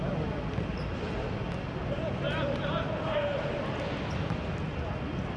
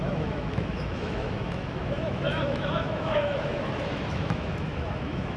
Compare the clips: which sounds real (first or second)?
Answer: first